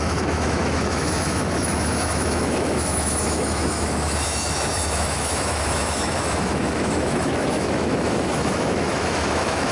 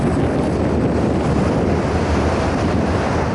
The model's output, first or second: first